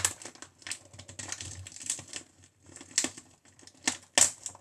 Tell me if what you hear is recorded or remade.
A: recorded